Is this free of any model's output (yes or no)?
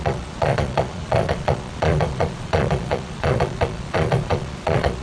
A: no